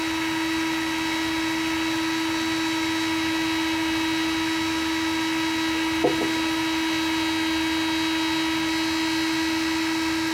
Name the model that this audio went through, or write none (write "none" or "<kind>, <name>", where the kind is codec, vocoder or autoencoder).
none